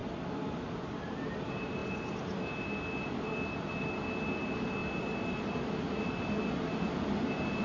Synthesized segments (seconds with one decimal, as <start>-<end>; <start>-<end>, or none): none